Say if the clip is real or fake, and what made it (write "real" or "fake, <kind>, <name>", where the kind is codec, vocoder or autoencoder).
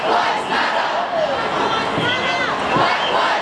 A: real